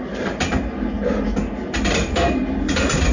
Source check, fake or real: real